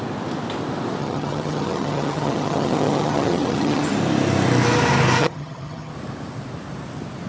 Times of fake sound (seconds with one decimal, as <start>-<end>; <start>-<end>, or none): 1.0-3.9; 5.2-5.9